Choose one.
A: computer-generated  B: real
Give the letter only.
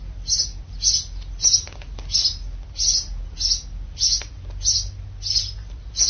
B